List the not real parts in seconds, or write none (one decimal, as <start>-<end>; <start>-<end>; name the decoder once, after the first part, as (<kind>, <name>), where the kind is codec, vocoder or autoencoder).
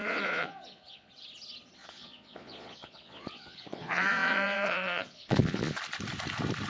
0.0-1.1 (vocoder, Vocos); 1.8-5.8